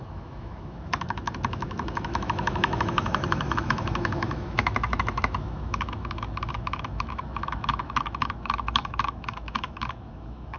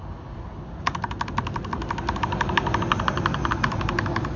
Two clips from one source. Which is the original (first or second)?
second